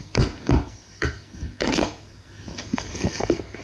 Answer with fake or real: fake